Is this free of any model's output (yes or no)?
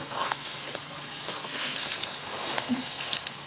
no